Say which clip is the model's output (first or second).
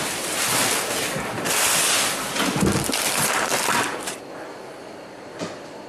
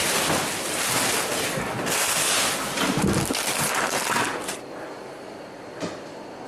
first